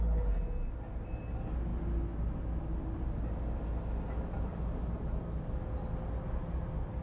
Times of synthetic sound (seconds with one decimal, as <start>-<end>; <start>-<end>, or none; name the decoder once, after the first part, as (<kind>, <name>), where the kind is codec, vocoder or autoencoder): none